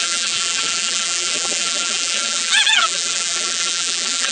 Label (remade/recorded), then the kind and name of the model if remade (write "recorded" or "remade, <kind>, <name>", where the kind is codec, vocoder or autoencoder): remade, vocoder, BigVGAN v2